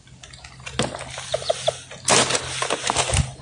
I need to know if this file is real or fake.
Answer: real